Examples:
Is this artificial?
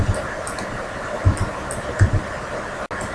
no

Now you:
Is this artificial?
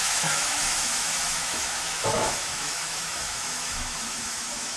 yes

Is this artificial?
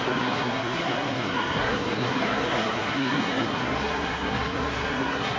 yes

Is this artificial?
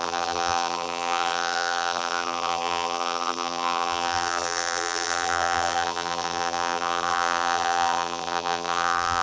yes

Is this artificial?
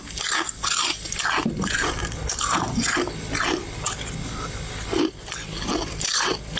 no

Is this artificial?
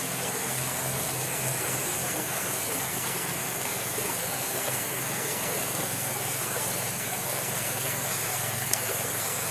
yes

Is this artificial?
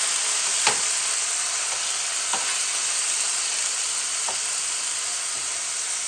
no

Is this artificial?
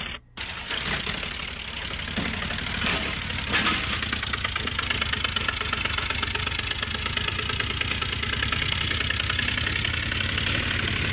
no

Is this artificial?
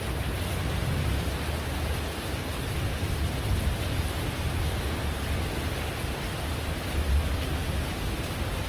no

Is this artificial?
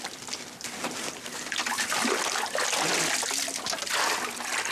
no